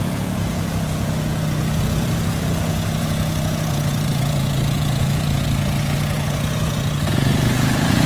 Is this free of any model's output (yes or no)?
no